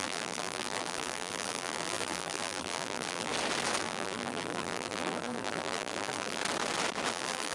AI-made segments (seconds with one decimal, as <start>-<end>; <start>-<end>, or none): 0.0-3.3; 3.8-6.4; 7.1-7.5